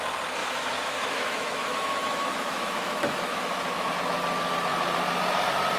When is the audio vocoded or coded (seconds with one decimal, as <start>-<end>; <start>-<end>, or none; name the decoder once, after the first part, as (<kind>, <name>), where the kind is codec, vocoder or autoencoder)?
0.4-3.9 (autoencoder, DAC-VAE)